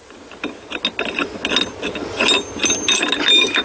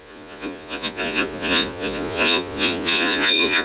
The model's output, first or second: second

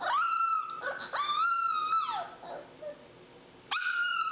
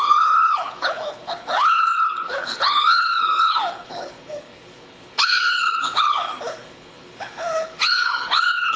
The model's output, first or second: second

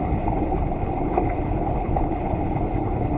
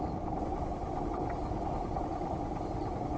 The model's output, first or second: first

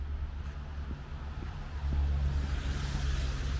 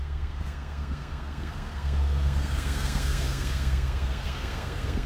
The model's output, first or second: second